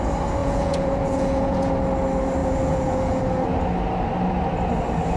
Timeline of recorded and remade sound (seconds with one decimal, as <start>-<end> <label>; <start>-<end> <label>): 0.0-0.4 recorded; 0.4-1.7 remade; 1.7-2.4 recorded; 2.4-3.2 remade; 3.2-5.2 recorded